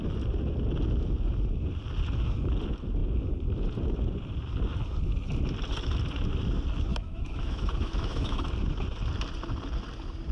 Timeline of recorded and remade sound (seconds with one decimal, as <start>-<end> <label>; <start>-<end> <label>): 0.0-6.9 recorded; 6.9-8.5 remade; 8.5-10.3 recorded